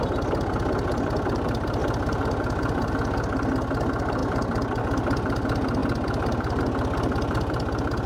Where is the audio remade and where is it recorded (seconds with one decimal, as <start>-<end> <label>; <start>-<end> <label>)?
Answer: 0.0-8.1 recorded